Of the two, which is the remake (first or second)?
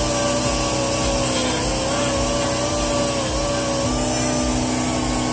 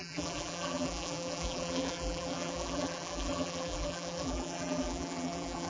second